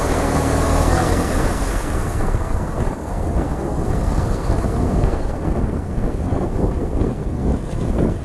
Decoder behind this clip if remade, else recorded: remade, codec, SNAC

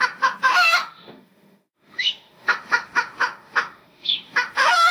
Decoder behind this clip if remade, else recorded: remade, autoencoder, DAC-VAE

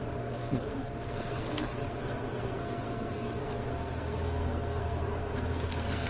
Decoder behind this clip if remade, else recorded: remade, codec, SNAC